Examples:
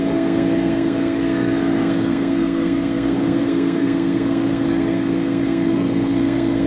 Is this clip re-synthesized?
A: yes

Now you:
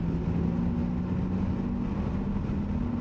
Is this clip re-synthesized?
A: no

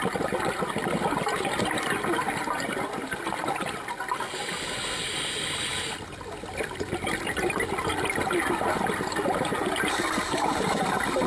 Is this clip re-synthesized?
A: no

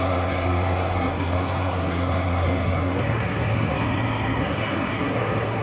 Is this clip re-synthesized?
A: yes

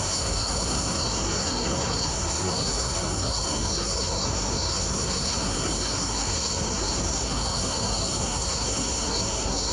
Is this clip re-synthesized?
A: yes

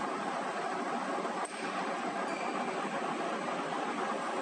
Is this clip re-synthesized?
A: no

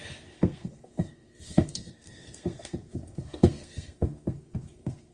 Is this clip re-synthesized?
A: yes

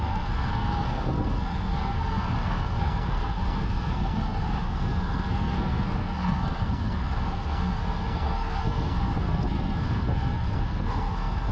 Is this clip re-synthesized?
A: yes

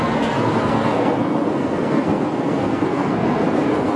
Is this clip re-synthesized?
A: yes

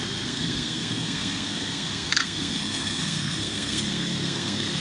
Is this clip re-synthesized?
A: yes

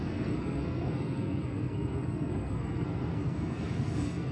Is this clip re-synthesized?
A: yes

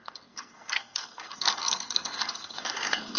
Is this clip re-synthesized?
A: yes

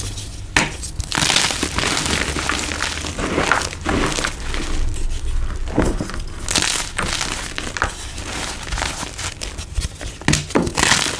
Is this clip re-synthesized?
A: no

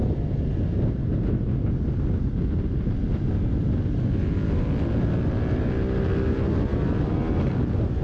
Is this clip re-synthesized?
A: no